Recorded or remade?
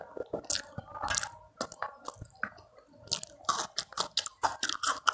recorded